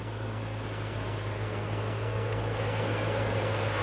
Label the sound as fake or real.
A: fake